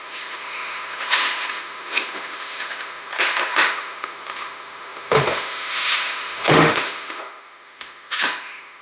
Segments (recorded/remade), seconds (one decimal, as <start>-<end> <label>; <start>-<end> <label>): 0.0-8.8 remade